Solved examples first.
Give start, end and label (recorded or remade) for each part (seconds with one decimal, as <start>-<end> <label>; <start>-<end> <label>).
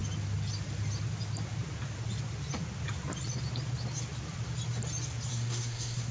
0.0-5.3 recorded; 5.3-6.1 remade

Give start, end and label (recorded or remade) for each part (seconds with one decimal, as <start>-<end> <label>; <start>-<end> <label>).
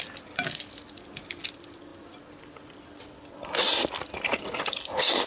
0.0-5.3 recorded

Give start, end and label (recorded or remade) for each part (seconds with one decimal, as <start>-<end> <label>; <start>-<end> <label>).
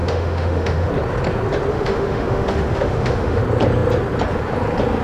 0.0-0.9 remade; 0.9-1.7 recorded; 1.7-3.4 remade; 3.4-5.0 recorded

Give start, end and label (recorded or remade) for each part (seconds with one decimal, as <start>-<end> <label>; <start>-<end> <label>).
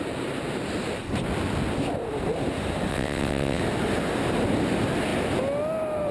0.0-2.9 recorded; 2.9-3.6 remade; 3.6-6.1 recorded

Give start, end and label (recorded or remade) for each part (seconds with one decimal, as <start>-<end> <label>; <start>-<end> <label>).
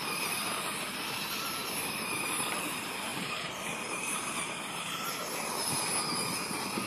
0.0-1.6 recorded; 1.6-2.6 remade; 2.6-3.1 recorded; 3.1-5.5 remade; 5.5-6.9 recorded